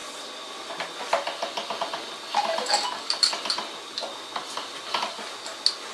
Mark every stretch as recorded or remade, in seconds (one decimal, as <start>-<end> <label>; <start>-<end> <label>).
0.0-5.9 recorded